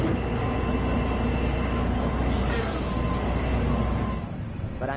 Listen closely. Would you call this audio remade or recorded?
recorded